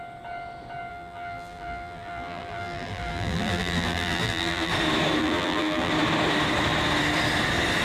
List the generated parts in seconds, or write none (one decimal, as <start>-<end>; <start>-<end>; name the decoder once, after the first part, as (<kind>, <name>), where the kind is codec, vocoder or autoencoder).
0.9-4.7 (vocoder, BigVGAN v2); 5.2-5.9